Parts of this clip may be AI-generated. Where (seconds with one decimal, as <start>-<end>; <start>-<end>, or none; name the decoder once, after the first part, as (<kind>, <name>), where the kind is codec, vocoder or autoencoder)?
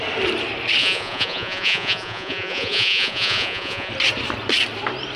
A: 0.8-3.9 (vocoder, Vocos)